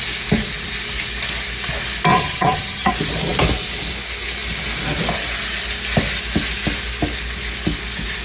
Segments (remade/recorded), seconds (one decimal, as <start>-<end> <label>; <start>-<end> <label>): 0.0-2.1 recorded; 2.1-2.9 remade; 2.9-8.2 recorded